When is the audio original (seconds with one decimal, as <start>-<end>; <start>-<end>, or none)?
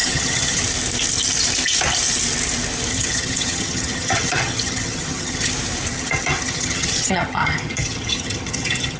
0.6-2.9; 5.5-5.9